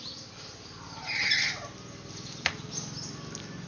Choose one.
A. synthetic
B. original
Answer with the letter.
B